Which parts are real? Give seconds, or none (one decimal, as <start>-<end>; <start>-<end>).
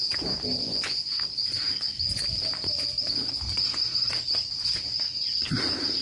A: 0.0-0.6; 1.2-6.0